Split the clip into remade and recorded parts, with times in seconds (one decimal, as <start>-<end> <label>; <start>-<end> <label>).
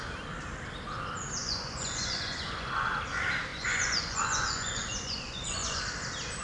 0.0-1.4 recorded; 1.4-3.0 remade; 3.0-3.5 recorded; 3.5-5.8 remade; 5.8-6.4 recorded